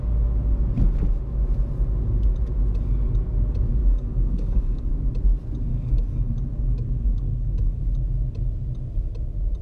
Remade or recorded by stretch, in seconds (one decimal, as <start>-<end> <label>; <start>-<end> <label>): 0.0-3.8 recorded; 3.8-4.9 remade; 4.9-5.7 recorded; 5.7-7.8 remade; 7.8-9.6 recorded